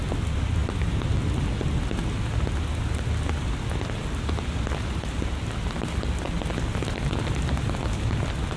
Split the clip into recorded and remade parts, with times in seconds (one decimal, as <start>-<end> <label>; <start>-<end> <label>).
0.0-8.6 recorded